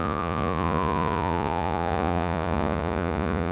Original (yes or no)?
no